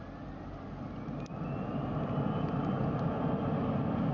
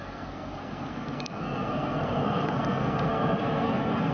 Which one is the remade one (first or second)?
second